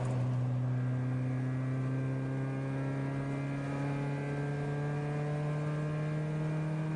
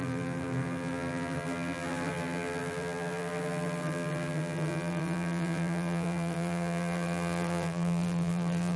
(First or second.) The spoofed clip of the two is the second